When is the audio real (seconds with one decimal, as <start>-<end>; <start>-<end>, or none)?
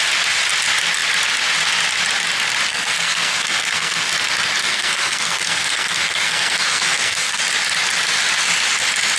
0.0-2.7; 4.1-4.6; 7.4-9.2